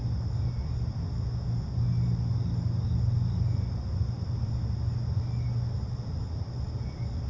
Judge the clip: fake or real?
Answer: real